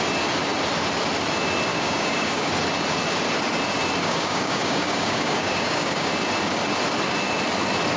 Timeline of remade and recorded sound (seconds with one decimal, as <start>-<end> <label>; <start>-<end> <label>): 0.0-1.7 recorded; 1.7-2.5 remade; 2.5-4.0 recorded; 4.0-6.1 remade; 6.1-8.0 recorded